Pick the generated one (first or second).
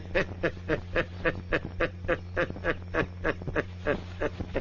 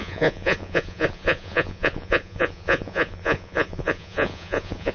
second